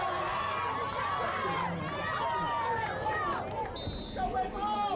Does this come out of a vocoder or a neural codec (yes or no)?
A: no